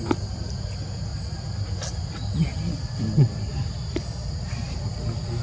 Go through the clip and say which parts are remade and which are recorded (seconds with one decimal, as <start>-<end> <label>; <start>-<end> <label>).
0.0-5.4 recorded